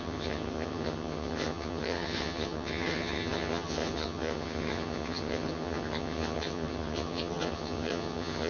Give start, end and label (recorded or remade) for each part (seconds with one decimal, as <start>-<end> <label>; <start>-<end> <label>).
0.0-8.5 remade